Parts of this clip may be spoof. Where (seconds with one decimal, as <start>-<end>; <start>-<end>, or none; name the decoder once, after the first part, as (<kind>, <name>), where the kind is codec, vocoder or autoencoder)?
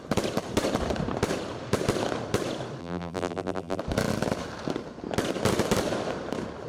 2.8-3.8 (vocoder, BigVGAN v2)